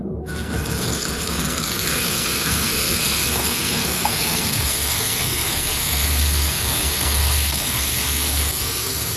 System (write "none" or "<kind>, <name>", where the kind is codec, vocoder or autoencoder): codec, SNAC